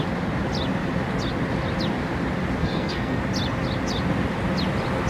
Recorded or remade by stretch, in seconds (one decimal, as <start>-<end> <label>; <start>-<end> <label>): 0.0-2.6 recorded; 2.6-3.2 remade; 3.2-5.1 recorded